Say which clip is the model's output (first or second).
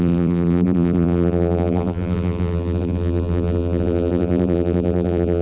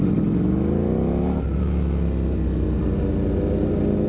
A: first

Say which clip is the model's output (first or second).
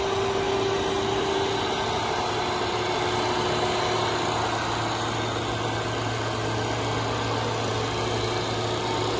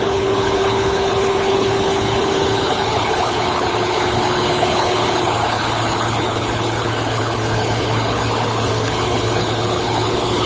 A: second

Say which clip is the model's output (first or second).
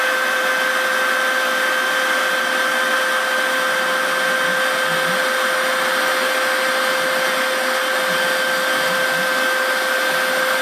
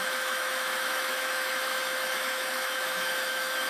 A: second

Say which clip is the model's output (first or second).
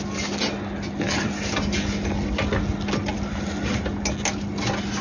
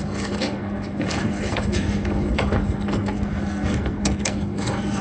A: second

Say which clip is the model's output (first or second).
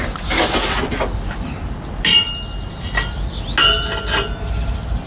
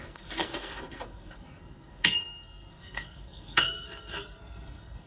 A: second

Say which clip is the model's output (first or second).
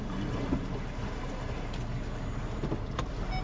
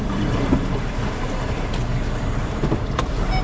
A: second